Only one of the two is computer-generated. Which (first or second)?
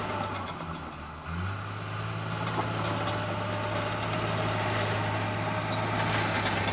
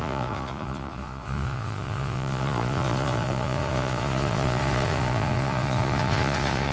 second